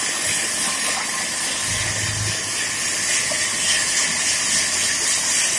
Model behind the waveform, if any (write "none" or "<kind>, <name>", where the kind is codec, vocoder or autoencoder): none